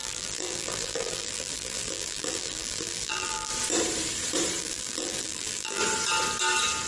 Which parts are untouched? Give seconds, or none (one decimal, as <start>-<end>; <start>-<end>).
3.5-4.6; 5.8-6.9